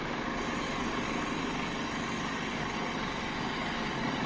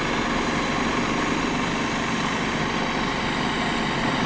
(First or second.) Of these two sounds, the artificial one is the first